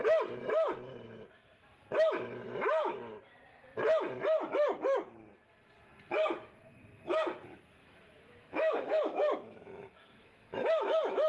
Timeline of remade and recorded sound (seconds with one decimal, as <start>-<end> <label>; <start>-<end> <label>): 0.0-7.8 recorded; 7.8-11.3 remade